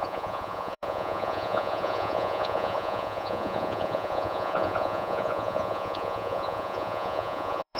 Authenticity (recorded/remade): remade